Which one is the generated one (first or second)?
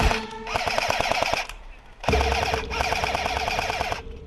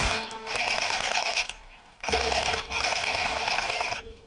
second